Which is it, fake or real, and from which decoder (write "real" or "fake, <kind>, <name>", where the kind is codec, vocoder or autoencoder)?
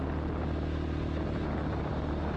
real